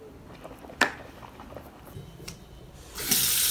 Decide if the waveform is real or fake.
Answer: fake